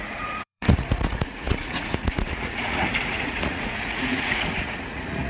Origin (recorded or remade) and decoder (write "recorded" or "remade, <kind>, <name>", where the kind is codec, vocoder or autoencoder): remade, vocoder, Vocos